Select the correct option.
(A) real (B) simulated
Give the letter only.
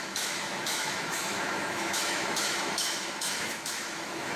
B